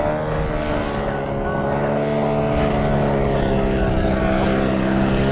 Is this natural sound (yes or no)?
yes